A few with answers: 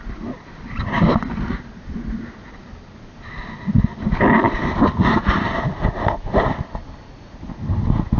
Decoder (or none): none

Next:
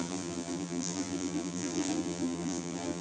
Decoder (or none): vocoder, BigVGAN v2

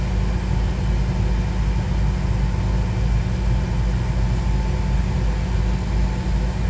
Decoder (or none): none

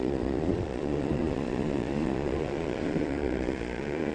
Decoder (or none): vocoder, Vocos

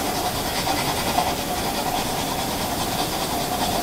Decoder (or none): none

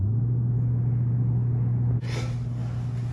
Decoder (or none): none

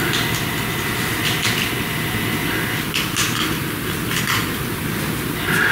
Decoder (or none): none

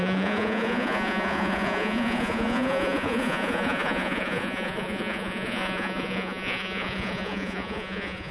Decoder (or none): vocoder, Vocos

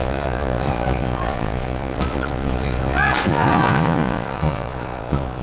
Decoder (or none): vocoder, Vocos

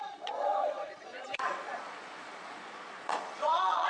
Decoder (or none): vocoder, Vocos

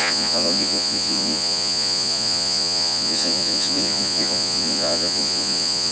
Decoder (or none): vocoder, Vocos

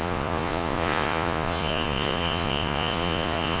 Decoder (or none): vocoder, Vocos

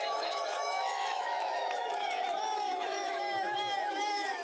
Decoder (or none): autoencoder, DAC-VAE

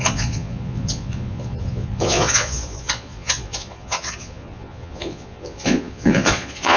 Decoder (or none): vocoder, Vocos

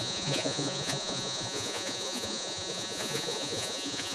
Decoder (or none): vocoder, Vocos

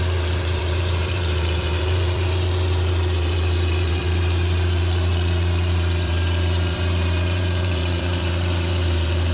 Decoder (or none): vocoder, BigVGAN v2